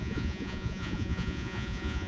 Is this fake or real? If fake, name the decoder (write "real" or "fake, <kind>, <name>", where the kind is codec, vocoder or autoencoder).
fake, vocoder, Vocos